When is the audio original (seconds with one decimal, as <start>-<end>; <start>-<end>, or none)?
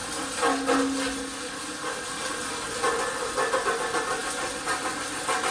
0.0-5.5